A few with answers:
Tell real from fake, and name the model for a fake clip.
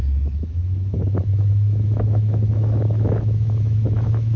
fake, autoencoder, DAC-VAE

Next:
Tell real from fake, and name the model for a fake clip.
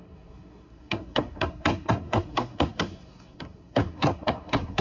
fake, codec, SNAC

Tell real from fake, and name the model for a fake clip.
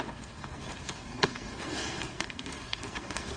fake, codec, SNAC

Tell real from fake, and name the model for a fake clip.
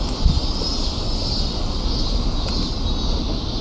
real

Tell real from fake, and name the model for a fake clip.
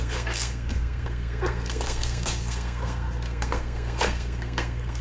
fake, codec, SNAC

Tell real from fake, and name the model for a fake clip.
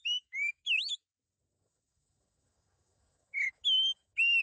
fake, autoencoder, DAC-VAE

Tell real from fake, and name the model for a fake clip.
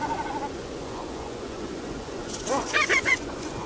fake, vocoder, Vocos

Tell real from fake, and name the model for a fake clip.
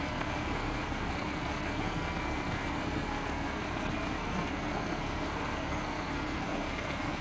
fake, codec, SNAC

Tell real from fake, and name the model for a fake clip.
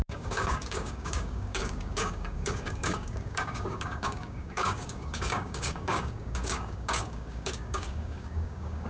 fake, codec, DAC